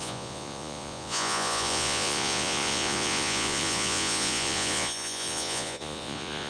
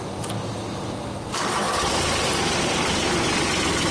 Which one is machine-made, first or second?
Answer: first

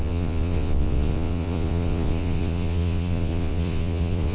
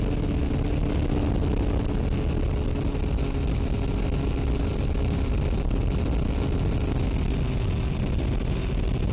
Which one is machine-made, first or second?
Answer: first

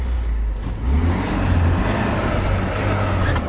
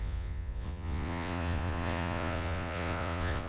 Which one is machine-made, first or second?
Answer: second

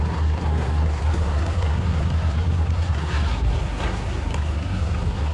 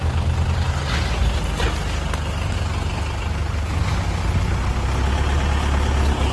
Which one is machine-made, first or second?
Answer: first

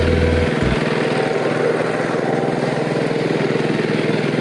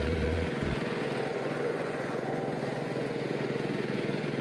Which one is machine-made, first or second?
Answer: second